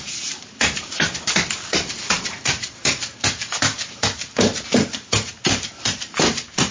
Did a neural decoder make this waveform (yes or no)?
yes